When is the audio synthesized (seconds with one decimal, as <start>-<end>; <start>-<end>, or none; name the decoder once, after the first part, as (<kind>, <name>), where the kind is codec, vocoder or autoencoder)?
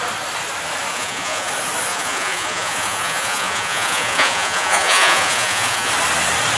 0.9-1.5 (vocoder, Vocos); 1.9-5.9